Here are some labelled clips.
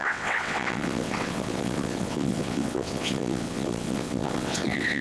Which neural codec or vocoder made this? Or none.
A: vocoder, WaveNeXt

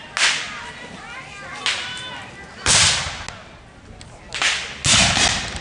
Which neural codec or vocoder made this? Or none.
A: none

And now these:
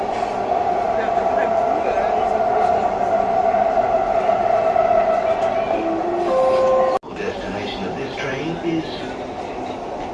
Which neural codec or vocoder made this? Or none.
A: none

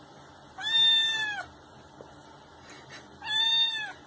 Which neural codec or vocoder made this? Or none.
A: none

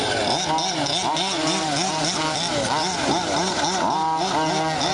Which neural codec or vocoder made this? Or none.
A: none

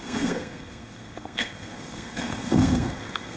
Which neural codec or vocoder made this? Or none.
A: codec, SNAC